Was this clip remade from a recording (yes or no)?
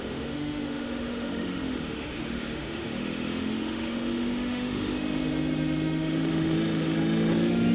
yes